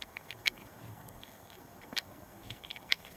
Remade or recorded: remade